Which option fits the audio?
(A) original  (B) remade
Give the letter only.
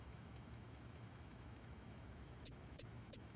B